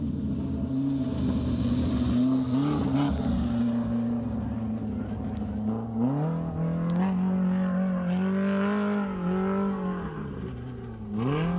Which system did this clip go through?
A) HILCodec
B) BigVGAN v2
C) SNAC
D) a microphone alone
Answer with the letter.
D